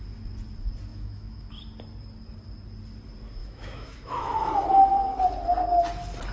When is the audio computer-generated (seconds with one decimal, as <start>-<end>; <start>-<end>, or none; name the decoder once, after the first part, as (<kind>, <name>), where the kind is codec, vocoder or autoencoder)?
0.9-1.5 (autoencoder, DAC-VAE); 3.4-4.5